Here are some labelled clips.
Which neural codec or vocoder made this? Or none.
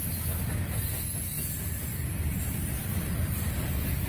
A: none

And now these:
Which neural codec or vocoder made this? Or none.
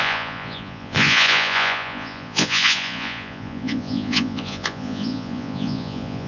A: vocoder, Vocos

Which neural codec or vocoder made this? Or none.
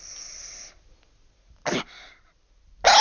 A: none